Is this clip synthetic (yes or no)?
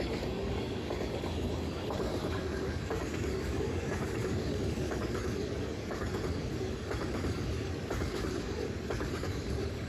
yes